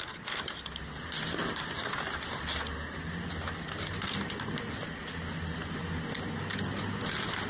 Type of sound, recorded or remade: recorded